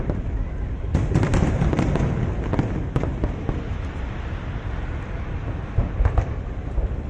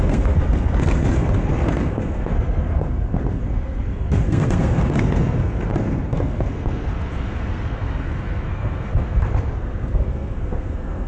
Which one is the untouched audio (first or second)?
first